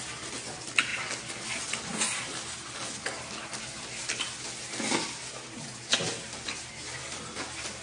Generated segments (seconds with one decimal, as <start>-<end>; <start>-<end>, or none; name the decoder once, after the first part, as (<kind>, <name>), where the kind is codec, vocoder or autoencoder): none

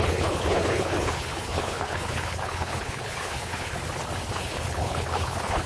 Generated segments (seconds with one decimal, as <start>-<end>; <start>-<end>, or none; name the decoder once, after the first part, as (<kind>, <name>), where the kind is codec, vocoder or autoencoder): 0.0-3.8 (codec, HILCodec); 4.3-5.7

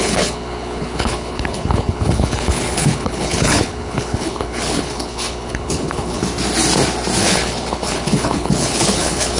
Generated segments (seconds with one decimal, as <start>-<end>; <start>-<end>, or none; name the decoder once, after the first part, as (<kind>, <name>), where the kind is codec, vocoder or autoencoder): 0.0-6.2 (codec, HILCodec); 7.2-9.4